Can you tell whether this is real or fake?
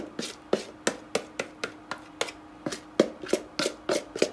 real